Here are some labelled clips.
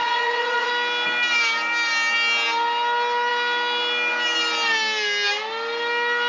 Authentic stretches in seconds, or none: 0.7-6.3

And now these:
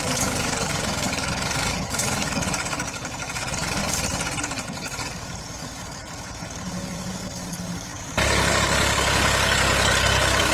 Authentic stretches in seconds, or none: 3.8-4.4

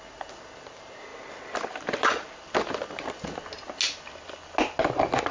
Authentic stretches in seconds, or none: 0.0-5.3

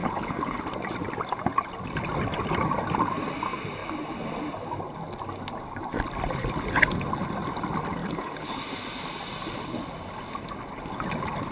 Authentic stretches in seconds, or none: 0.6-8.0; 8.6-11.5

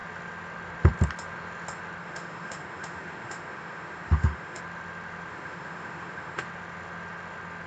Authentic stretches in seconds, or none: 0.0-2.0; 4.6-5.3; 6.4-7.7

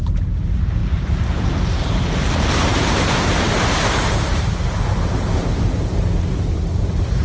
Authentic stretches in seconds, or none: none

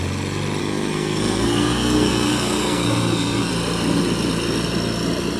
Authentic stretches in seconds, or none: 0.0-0.6; 3.5-5.4

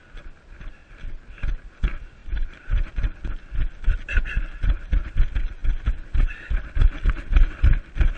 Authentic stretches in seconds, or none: 0.0-0.8; 1.4-2.2; 2.9-4.0; 4.9-8.2